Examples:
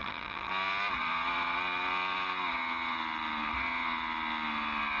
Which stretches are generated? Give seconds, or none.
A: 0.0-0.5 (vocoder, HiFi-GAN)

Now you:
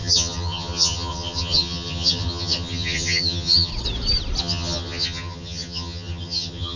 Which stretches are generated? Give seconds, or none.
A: 0.0-3.7 (vocoder, HiFi-GAN); 4.4-6.8

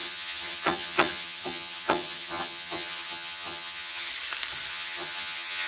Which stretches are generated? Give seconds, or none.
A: 0.0-4.1 (vocoder, HiFi-GAN); 4.7-5.7

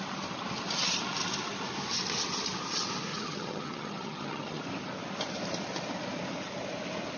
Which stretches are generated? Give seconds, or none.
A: 3.1-4.6 (vocoder, HiFi-GAN)

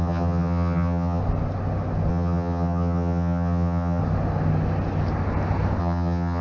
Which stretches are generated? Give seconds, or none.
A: 0.0-1.2 (vocoder, HiFi-GAN); 2.1-4.0; 5.8-6.4